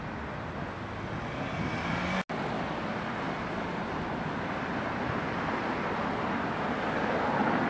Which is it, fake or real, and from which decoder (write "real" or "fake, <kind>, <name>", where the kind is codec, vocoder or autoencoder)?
real